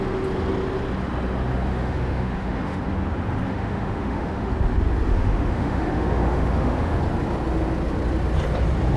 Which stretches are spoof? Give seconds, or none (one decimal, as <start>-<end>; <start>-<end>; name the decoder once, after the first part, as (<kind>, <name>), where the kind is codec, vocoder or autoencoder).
1.7-2.8 (autoencoder, DAC-VAE); 3.5-4.5; 5.1-7.0